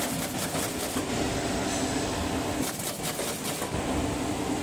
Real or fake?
real